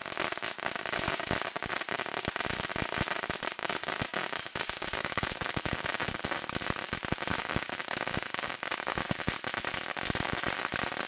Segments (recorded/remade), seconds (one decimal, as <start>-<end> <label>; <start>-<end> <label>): 0.0-3.6 recorded; 3.6-6.2 remade; 6.2-7.3 recorded; 7.3-9.3 remade; 9.3-11.1 recorded